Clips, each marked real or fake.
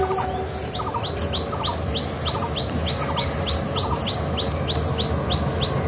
real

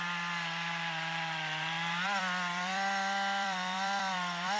fake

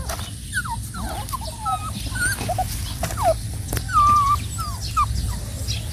real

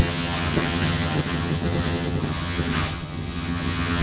fake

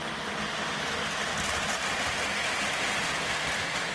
real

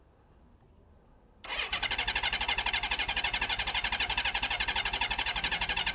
real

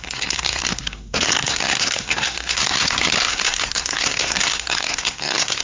fake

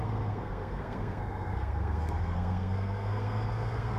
fake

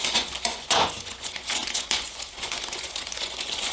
fake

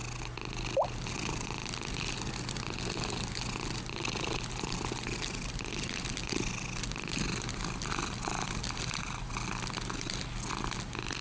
real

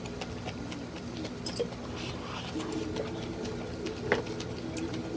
real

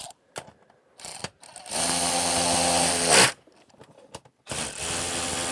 real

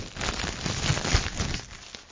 real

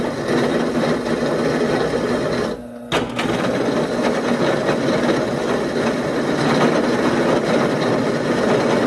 real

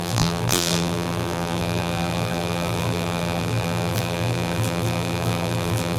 fake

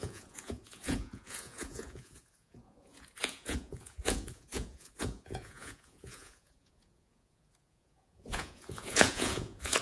fake